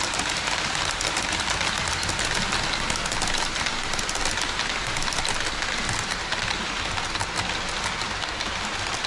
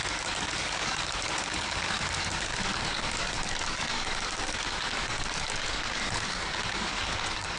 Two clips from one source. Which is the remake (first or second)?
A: second